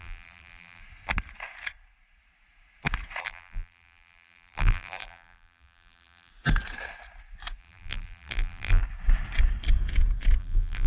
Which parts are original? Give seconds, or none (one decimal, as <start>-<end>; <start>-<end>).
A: 0.8-3.2; 6.3-7.6; 8.8-10.4